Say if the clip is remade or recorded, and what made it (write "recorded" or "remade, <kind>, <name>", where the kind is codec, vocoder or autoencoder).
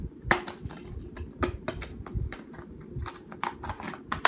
recorded